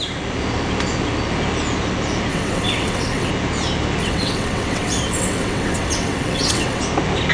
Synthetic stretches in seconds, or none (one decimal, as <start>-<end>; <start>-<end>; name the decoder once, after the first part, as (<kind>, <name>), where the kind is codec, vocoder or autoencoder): 2.3-3.3 (vocoder, WaveNeXt); 4.0-6.8